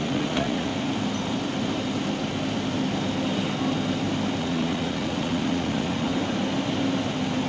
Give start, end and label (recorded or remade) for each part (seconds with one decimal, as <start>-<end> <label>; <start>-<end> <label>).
0.0-0.7 remade; 0.7-4.4 recorded; 4.4-6.1 remade; 6.1-7.5 recorded